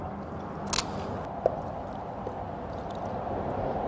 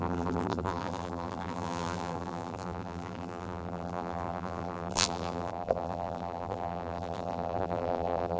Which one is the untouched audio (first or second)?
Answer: first